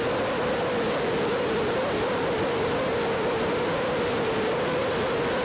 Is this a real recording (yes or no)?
yes